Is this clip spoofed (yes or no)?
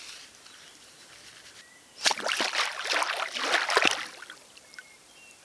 yes